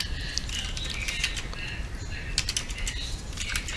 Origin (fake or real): real